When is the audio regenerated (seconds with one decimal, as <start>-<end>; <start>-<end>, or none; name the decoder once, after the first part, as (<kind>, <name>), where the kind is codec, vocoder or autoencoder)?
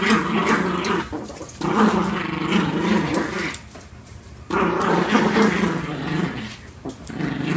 none